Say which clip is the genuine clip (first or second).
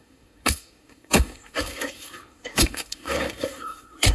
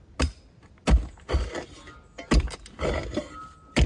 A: second